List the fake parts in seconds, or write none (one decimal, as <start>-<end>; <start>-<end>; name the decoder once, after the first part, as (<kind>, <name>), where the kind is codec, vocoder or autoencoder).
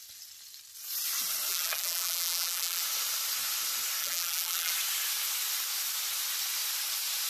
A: 1.5-2.8 (vocoder, BigVGAN v2); 4.0-4.7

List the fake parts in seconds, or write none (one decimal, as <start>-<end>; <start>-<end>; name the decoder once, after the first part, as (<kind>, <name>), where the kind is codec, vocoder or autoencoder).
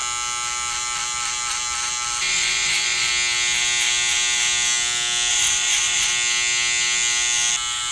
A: 2.2-3.1 (vocoder, Vocos); 5.3-6.1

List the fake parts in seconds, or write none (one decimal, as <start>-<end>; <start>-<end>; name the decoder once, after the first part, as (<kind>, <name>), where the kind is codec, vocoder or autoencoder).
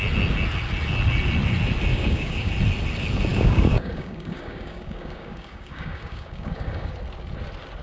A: 1.9-2.5 (codec, DAC); 3.3-6.9